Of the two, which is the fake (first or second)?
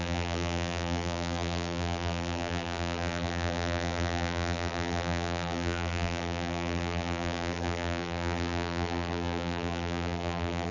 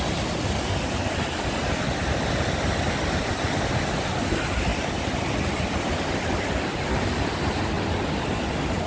first